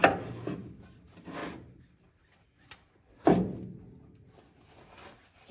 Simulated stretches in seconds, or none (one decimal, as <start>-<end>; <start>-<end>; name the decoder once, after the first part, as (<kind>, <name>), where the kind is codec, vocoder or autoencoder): none

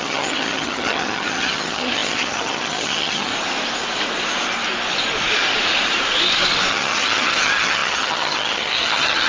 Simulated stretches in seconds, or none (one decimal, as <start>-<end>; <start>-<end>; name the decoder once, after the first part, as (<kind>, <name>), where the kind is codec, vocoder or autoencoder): 0.0-3.3 (vocoder, HiFi-GAN); 6.7-9.3

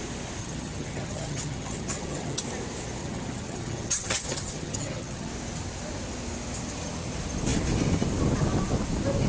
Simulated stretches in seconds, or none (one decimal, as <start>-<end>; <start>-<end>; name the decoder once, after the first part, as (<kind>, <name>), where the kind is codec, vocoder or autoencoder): 0.4-2.4 (vocoder, HiFi-GAN); 3.0-5.3

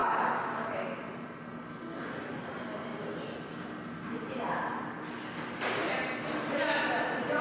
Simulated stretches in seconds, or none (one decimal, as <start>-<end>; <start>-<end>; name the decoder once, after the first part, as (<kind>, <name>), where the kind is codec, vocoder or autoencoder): none

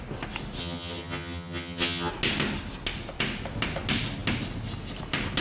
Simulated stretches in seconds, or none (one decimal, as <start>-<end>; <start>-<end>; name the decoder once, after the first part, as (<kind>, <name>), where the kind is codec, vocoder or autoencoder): 0.6-2.1 (vocoder, HiFi-GAN)

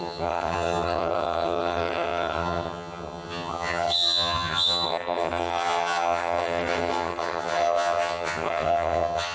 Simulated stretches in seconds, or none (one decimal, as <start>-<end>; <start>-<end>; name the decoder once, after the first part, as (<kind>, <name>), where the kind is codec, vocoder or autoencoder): 0.0-9.3 (vocoder, HiFi-GAN)

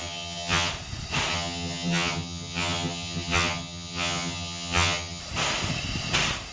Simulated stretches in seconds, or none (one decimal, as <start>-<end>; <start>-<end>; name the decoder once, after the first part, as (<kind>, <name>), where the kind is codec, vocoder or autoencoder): 0.0-0.7 (vocoder, HiFi-GAN); 1.3-5.2